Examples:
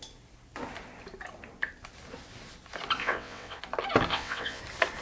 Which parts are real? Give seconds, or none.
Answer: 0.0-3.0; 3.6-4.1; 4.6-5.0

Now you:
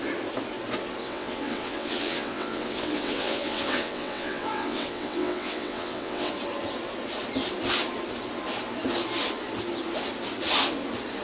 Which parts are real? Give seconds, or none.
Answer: 0.0-1.0; 6.3-11.2

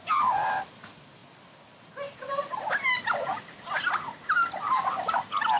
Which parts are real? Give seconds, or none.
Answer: 0.0-5.6

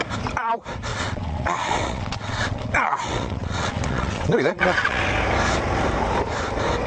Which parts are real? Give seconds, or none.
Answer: 0.0-0.9; 5.0-6.9

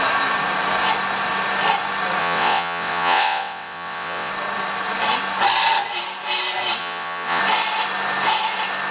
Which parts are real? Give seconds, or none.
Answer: 0.0-2.2; 4.3-6.8; 7.4-8.9

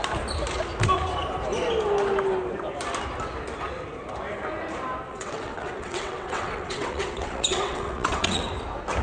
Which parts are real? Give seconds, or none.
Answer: 0.0-5.1; 8.5-9.0

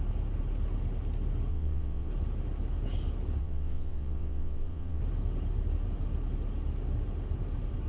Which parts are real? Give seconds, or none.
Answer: 0.0-1.5; 2.1-3.4; 5.0-7.9

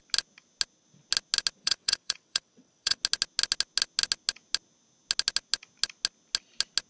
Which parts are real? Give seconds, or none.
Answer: 0.0-1.6; 3.0-6.9